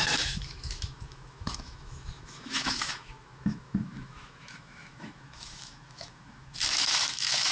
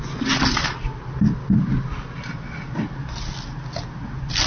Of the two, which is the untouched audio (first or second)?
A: second